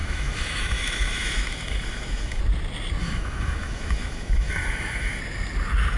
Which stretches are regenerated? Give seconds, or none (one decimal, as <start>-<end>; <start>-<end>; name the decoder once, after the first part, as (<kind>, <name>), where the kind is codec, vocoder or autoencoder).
0.0-2.4 (autoencoder, DAC-VAE); 3.0-5.2